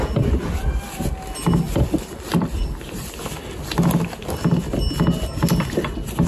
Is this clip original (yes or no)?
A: yes